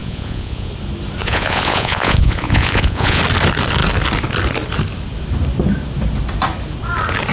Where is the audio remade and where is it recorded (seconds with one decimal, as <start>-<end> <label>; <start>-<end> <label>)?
0.0-0.7 remade; 0.7-1.2 recorded; 1.2-3.2 remade; 3.2-7.3 recorded